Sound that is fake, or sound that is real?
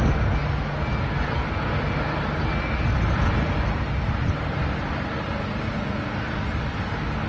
real